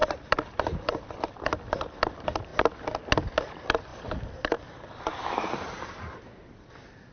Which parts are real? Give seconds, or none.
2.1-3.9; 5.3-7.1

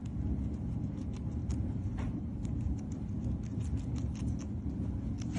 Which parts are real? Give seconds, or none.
0.0-1.4; 2.8-5.4

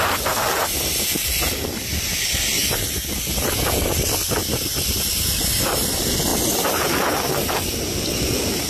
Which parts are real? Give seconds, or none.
0.0-8.7

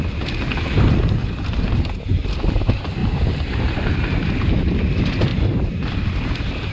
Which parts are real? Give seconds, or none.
0.0-1.2; 2.3-3.0; 3.6-5.3; 5.9-6.7

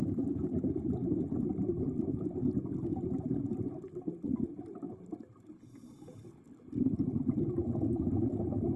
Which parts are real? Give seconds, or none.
0.0-8.8